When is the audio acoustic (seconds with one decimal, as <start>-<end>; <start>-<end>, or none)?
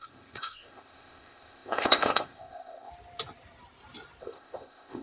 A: 2.9-4.2